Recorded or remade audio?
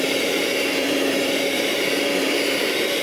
remade